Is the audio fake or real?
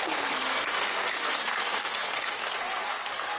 fake